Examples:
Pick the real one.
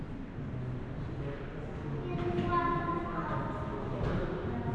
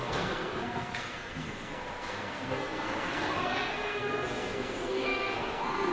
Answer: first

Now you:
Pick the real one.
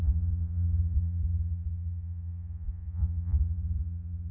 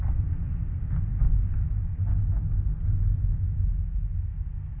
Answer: second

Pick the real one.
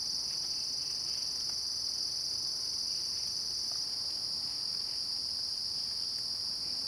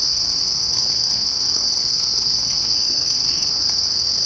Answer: first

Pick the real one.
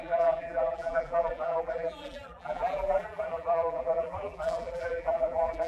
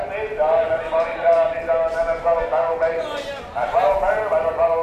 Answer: second